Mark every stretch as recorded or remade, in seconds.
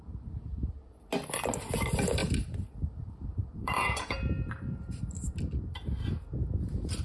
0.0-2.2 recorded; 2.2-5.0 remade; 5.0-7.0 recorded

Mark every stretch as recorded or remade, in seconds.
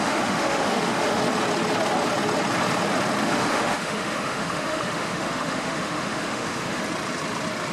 0.0-1.2 remade; 1.2-3.2 recorded; 3.2-6.8 remade; 6.8-7.7 recorded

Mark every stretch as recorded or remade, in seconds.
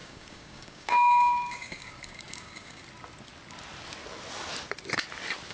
0.0-2.8 remade; 2.8-5.5 recorded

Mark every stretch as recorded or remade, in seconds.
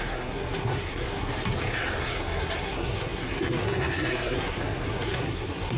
0.0-1.3 remade; 1.3-2.0 recorded; 2.0-5.8 remade